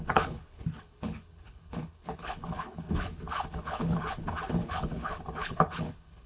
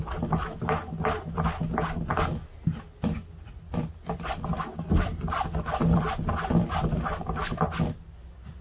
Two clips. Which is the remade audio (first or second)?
first